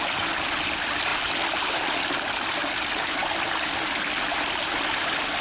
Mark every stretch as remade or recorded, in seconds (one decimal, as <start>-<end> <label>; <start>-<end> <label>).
0.0-5.4 recorded